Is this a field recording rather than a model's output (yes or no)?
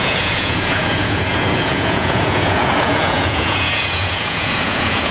no